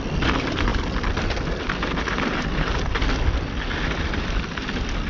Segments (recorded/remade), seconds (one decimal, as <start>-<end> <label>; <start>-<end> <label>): 0.0-5.1 recorded